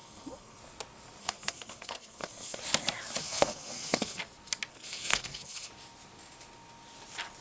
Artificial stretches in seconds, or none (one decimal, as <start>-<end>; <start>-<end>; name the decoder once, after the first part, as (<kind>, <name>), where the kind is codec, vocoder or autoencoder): 0.0-0.6 (codec, SNAC); 1.2-2.6; 3.2-4.2; 4.7-5.7